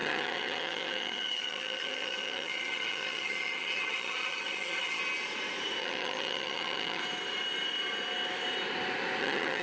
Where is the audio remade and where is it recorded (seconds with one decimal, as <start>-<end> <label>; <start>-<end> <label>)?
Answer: 0.0-5.0 remade; 5.0-5.8 recorded; 5.8-7.0 remade; 7.0-9.2 recorded; 9.2-9.6 remade

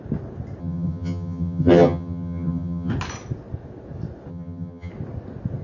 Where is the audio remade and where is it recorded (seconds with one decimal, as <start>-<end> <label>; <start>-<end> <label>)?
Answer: 0.0-0.6 recorded; 0.6-2.9 remade; 2.9-4.3 recorded; 4.3-4.9 remade; 4.9-5.6 recorded

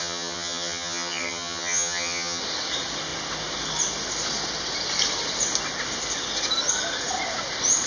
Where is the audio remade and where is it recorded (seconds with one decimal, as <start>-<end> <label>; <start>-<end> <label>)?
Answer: 0.0-2.4 remade; 2.4-7.9 recorded

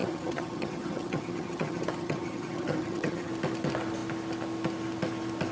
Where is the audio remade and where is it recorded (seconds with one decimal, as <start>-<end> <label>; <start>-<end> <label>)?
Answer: 0.0-3.3 remade; 3.3-5.5 recorded

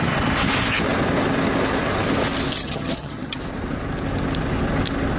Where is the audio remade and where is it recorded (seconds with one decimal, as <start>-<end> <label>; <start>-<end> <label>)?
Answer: 0.0-2.6 recorded; 2.6-3.4 remade; 3.4-5.2 recorded

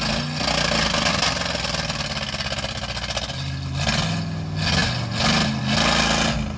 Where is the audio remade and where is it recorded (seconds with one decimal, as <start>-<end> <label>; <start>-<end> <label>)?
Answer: 0.0-6.6 recorded